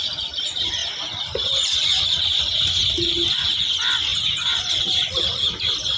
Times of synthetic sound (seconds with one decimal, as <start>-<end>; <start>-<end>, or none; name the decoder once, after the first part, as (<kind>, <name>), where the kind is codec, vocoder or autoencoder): 0.0-4.1 (vocoder, BigVGAN v2); 4.6-6.0